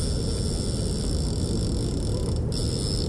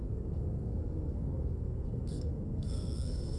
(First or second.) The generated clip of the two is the second